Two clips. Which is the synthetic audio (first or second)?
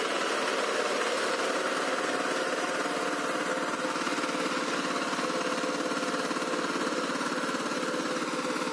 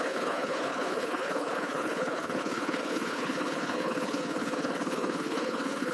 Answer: second